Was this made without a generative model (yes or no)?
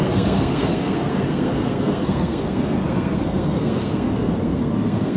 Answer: no